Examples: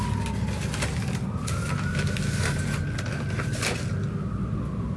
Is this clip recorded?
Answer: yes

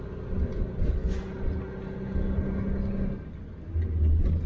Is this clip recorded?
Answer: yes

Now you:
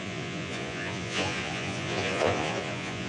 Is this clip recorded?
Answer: no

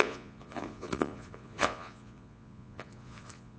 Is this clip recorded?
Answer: no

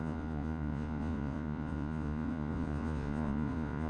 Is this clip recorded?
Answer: no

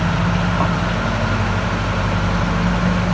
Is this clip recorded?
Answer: yes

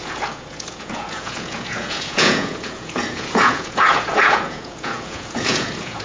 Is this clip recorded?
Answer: no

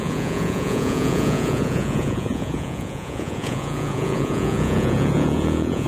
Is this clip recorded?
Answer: no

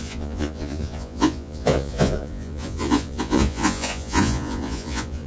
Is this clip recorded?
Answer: no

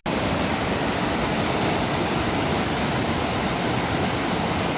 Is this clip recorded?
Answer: yes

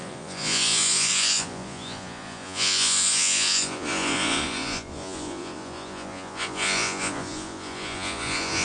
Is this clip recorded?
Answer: no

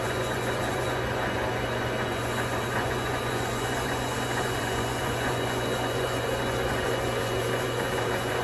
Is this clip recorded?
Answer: no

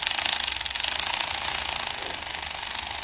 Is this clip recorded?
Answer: yes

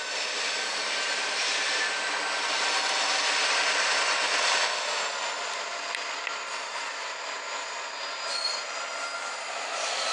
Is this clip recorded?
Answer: yes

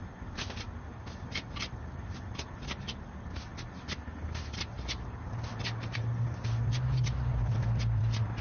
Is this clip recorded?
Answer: yes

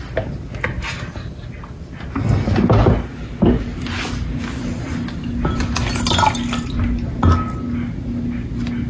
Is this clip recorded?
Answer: yes